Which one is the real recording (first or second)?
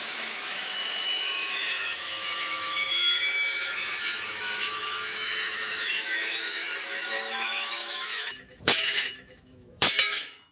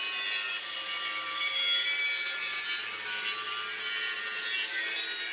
second